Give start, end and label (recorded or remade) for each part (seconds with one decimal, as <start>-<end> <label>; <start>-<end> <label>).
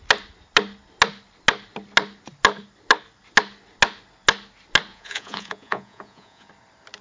0.0-4.9 recorded; 4.9-6.5 remade; 6.5-7.0 recorded